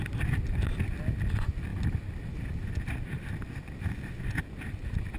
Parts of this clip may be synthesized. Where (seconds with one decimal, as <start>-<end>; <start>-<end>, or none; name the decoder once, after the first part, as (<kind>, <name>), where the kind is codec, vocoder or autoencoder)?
1.7-4.8 (vocoder, BigVGAN v2)